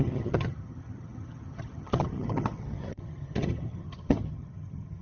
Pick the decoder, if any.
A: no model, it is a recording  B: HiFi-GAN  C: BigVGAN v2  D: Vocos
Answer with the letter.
B